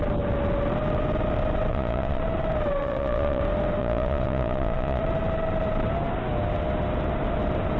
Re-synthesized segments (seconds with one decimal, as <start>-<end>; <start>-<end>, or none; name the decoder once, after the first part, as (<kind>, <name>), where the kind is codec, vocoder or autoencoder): 1.7-2.2 (vocoder, Vocos); 2.8-3.4; 3.8-5.0